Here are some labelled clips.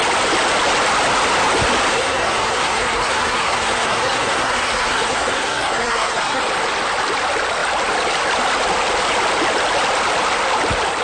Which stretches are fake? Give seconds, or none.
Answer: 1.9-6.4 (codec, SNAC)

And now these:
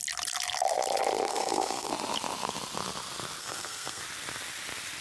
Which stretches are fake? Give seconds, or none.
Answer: 1.3-1.9 (codec, SNAC); 3.4-4.0

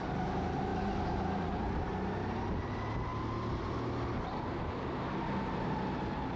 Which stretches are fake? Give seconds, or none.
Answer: none

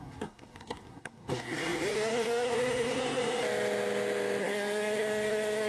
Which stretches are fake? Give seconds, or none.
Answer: 0.0-3.4 (codec, SNAC); 4.4-5.7

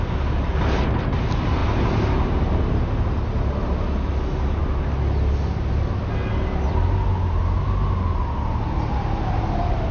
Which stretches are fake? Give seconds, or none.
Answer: none

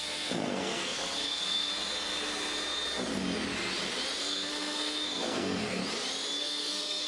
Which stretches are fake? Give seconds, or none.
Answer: 0.0-1.7 (codec, SNAC); 4.2-5.8; 6.4-7.1